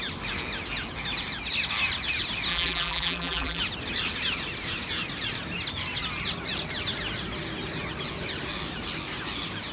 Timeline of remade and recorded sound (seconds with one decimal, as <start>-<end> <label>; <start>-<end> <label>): 0.0-2.5 recorded; 2.5-3.6 remade; 3.6-9.7 recorded

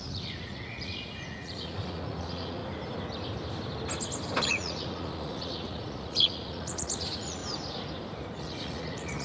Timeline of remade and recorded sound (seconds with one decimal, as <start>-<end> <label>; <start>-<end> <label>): 0.0-2.6 remade; 2.6-4.4 recorded; 4.4-7.4 remade; 7.4-8.3 recorded; 8.3-9.2 remade

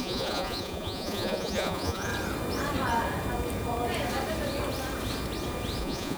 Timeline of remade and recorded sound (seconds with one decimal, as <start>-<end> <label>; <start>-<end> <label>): 0.0-2.1 remade; 2.1-5.8 recorded; 5.8-6.2 remade

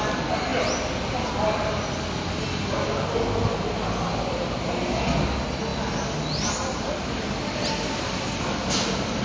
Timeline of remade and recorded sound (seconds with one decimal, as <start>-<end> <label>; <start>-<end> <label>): 0.0-9.2 recorded

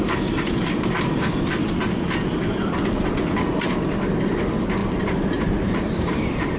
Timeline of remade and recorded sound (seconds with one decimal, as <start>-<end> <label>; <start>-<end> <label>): 0.0-4.8 recorded; 4.8-6.6 remade